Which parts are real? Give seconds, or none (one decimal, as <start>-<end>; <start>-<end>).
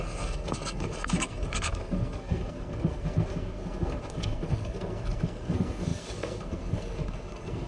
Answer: none